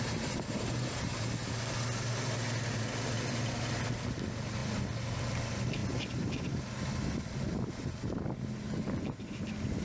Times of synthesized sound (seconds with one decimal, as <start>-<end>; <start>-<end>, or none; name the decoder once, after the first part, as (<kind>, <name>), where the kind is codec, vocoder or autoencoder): none